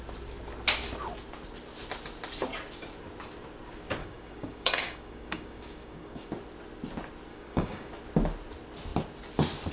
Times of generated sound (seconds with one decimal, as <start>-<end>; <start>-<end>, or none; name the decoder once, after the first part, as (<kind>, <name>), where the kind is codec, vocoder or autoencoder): 4.0-6.3 (codec, DAC); 7.3-7.9